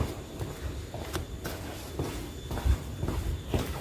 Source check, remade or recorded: recorded